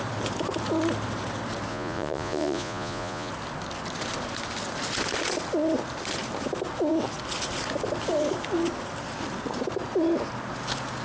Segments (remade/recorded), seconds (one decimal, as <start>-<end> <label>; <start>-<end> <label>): 0.0-1.7 recorded; 1.7-3.3 remade; 3.3-11.0 recorded